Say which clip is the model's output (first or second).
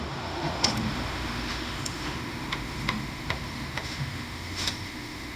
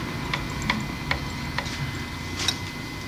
first